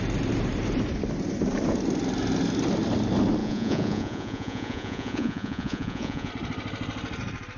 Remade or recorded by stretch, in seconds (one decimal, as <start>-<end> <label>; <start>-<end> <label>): 0.0-3.4 recorded; 3.4-6.3 remade; 6.3-7.6 recorded